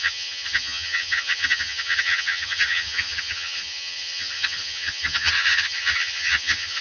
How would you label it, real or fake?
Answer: fake